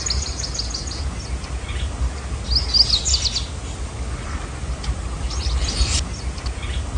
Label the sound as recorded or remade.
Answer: recorded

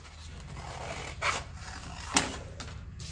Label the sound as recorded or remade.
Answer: recorded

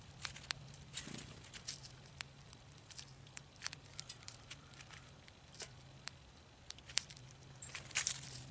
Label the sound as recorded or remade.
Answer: remade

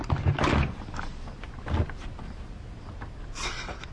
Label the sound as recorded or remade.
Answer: recorded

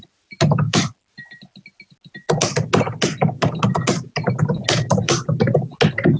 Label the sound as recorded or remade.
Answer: recorded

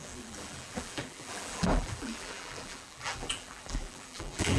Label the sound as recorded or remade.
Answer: remade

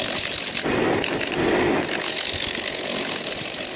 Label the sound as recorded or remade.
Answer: recorded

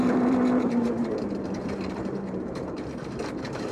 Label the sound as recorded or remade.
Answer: remade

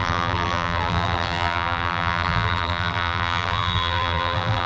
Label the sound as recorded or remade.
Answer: remade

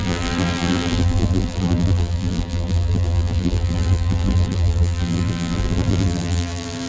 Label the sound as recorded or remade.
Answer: remade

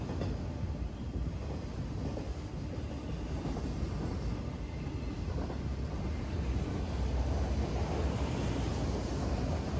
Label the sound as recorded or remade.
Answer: recorded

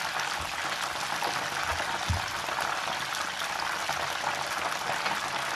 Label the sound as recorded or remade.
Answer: recorded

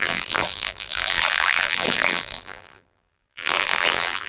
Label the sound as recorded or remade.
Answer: remade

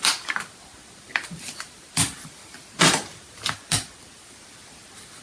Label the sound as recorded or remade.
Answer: remade